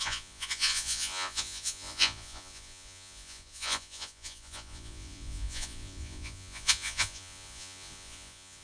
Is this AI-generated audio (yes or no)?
yes